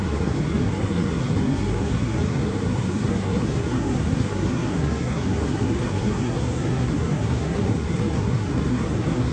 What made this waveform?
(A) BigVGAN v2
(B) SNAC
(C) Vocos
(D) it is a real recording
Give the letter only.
B